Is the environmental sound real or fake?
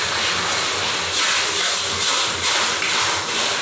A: real